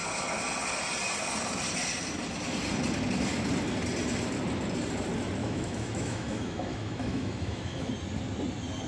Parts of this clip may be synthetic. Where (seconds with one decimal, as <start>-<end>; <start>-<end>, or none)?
5.4-7.9